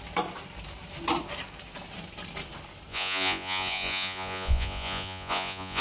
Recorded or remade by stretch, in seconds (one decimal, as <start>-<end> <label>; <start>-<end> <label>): 0.0-2.9 recorded; 2.9-5.8 remade